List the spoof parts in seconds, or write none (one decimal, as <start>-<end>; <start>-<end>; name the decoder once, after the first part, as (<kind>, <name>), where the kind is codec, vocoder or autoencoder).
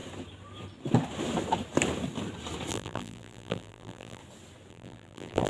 2.7-4.2 (vocoder, BigVGAN v2); 4.7-5.5